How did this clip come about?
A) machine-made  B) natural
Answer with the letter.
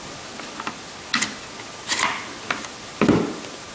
B